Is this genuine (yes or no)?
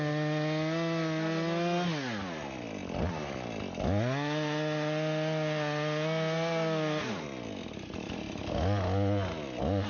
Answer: yes